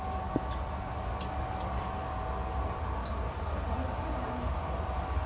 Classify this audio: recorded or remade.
recorded